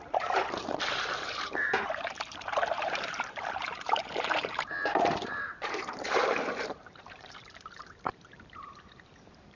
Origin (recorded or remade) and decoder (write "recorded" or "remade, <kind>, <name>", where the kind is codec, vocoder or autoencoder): remade, vocoder, BigVGAN v2